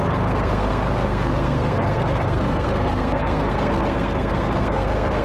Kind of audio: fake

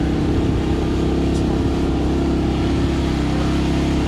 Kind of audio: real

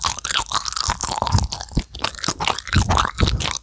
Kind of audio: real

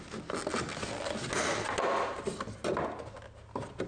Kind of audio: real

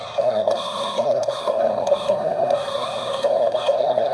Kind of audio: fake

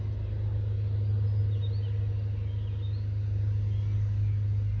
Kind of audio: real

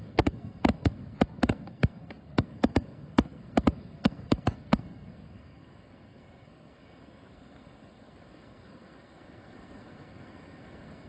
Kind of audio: fake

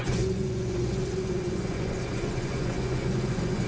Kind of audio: fake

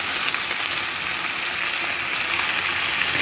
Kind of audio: real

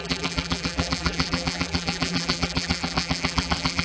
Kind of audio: fake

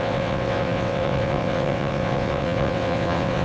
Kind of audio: fake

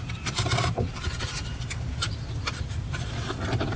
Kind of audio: fake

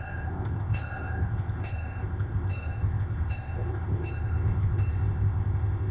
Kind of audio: fake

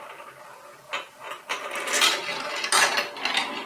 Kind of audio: real